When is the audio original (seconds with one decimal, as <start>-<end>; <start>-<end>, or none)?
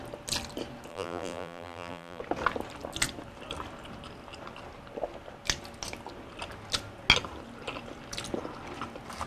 0.0-0.9; 2.2-9.3